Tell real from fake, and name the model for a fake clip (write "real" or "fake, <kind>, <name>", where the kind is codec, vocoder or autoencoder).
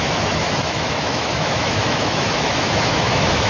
fake, autoencoder, DAC-VAE